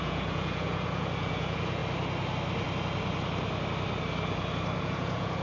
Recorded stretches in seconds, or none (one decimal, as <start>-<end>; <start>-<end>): 1.8-4.8